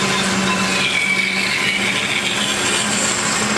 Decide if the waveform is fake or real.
real